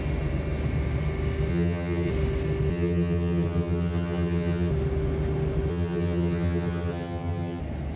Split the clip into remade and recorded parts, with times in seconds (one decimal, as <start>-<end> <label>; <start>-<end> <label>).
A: 0.0-1.5 recorded; 1.5-2.1 remade; 2.1-2.7 recorded; 2.7-4.7 remade; 4.7-5.7 recorded; 5.7-7.6 remade; 7.6-8.0 recorded

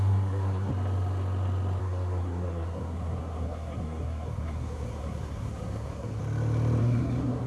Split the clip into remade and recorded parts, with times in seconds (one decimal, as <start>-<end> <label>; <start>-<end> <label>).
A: 0.0-0.7 remade; 0.7-1.8 recorded; 1.8-6.2 remade; 6.2-6.8 recorded; 6.8-7.5 remade

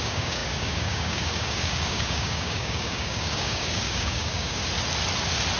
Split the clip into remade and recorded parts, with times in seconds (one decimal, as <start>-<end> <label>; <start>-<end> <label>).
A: 0.0-4.6 remade; 4.6-5.6 recorded

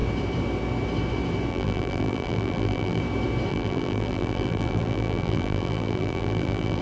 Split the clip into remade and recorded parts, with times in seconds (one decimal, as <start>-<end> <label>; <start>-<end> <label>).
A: 0.0-1.5 recorded; 1.5-3.0 remade; 3.0-3.5 recorded; 3.5-6.8 remade

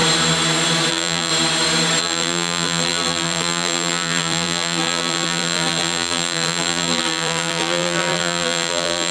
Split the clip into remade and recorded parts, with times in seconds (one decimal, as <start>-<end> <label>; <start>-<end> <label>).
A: 0.0-0.9 recorded; 0.9-1.3 remade; 1.3-2.0 recorded; 2.0-9.1 remade